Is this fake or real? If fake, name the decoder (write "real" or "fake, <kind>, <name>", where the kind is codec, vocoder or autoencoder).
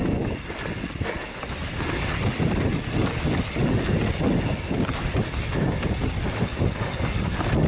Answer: real